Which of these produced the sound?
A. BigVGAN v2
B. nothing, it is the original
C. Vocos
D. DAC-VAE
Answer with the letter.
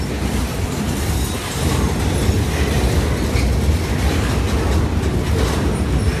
B